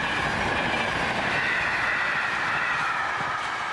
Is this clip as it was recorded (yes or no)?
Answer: yes